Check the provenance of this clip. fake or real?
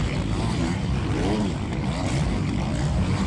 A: real